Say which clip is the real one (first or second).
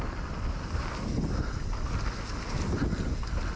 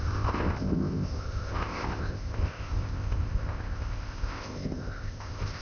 first